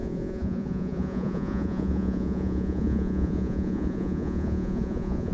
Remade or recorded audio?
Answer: remade